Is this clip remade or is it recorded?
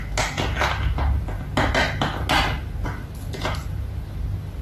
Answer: recorded